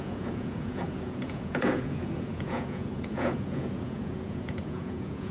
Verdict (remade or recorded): remade